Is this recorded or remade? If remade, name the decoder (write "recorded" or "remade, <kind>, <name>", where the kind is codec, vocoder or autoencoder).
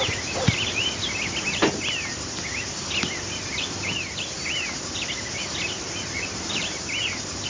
remade, vocoder, BigVGAN v2